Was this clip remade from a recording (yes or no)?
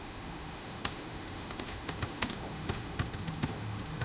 yes